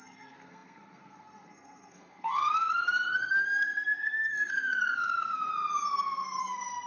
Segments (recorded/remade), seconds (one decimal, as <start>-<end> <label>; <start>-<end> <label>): 0.0-5.5 remade; 5.5-6.4 recorded; 6.4-6.9 remade